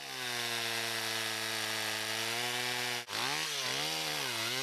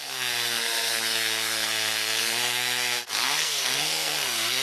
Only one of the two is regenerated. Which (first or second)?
second